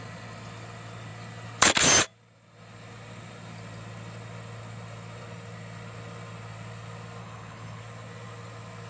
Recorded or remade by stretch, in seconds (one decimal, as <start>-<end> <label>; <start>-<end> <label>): 0.0-7.2 recorded; 7.2-7.8 remade; 7.8-8.9 recorded